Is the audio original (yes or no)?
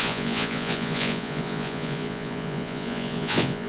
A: no